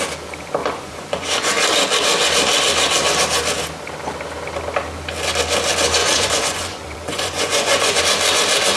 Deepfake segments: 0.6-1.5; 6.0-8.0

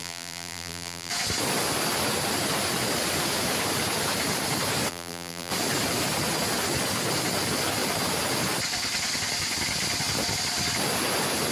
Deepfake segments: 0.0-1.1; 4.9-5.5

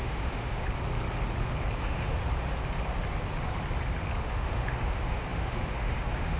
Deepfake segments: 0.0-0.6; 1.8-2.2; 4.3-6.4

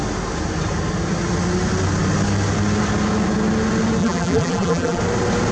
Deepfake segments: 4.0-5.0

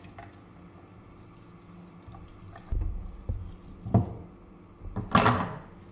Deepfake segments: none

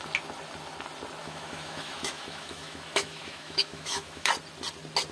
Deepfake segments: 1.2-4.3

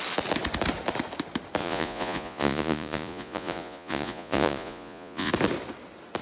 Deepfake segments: 1.6-5.3

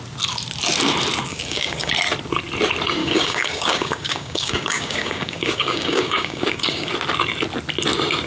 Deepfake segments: 1.3-1.9; 3.0-6.9